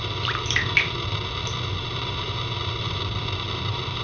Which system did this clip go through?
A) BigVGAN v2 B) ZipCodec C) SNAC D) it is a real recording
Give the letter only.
D